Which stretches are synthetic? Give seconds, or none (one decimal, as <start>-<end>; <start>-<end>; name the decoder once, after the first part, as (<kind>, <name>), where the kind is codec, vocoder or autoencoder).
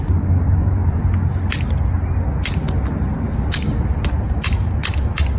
0.0-0.8 (vocoder, BigVGAN v2); 4.0-4.8